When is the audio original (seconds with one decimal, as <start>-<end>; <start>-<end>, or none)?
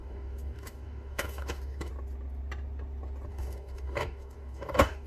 1.9-3.3